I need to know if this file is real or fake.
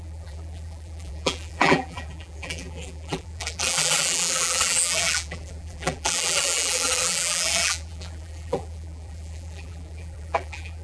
fake